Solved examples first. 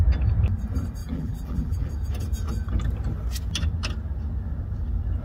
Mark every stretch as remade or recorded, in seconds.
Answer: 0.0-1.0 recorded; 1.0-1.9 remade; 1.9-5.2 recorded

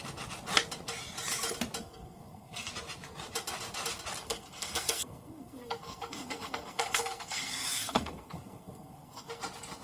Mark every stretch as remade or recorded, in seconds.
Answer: 0.0-1.8 recorded; 1.8-2.7 remade; 2.7-4.2 recorded; 4.2-9.4 remade; 9.4-9.8 recorded

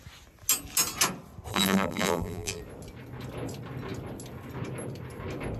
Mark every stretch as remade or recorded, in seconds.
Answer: 0.0-1.5 recorded; 1.5-2.6 remade; 2.6-5.6 recorded

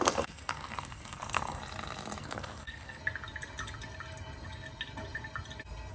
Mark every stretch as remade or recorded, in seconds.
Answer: 0.0-1.6 remade; 1.6-2.2 recorded; 2.2-3.0 remade; 3.0-5.9 recorded

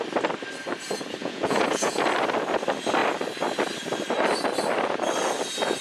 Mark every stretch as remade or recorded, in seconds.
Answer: 0.0-1.2 recorded; 1.2-2.0 remade; 2.0-5.8 recorded

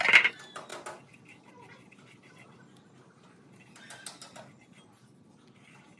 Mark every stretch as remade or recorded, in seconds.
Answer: 0.0-6.0 recorded

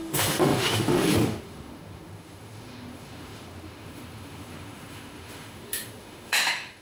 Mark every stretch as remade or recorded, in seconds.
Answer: 0.0-6.8 remade